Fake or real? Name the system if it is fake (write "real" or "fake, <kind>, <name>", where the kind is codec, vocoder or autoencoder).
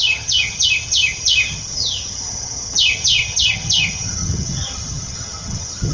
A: fake, vocoder, HiFi-GAN